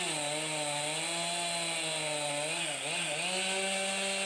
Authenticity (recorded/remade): recorded